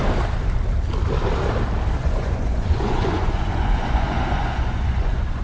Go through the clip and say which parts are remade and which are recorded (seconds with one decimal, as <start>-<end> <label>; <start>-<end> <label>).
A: 0.0-2.0 recorded; 2.0-5.4 remade